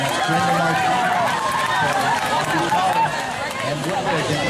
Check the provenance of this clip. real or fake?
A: real